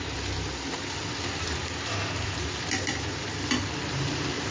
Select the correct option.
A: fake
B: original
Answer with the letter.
A